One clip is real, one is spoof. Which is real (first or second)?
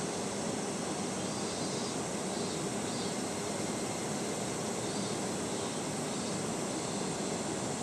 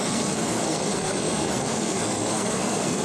first